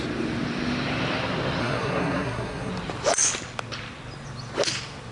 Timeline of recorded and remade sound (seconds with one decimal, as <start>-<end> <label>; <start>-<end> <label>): 0.0-1.6 recorded; 1.6-2.7 remade; 2.7-5.1 recorded